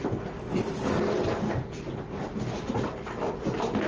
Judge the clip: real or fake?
real